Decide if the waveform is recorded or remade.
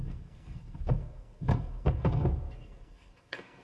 remade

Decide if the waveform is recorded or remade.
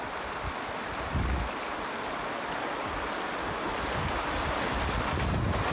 recorded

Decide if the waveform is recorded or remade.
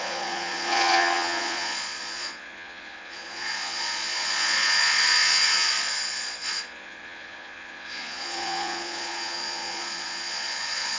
remade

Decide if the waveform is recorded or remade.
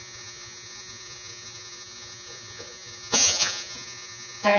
remade